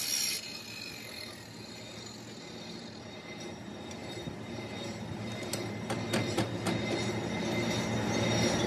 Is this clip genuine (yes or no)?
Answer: yes